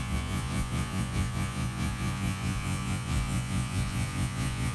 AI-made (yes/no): yes